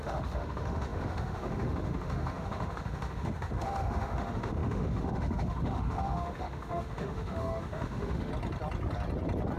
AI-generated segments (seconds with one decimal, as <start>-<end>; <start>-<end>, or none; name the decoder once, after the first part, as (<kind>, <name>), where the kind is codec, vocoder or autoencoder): 0.0-8.3 (autoencoder, DAC-VAE)